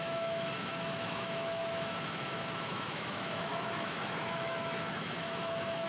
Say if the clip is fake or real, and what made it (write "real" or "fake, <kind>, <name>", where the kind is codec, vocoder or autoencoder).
fake, autoencoder, DAC-VAE